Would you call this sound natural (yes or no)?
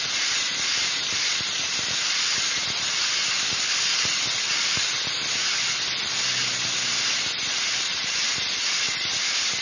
yes